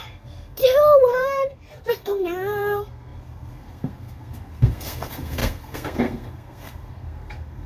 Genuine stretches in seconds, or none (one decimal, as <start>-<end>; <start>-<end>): 0.6-1.1